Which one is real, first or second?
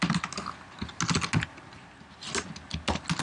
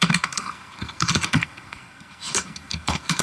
first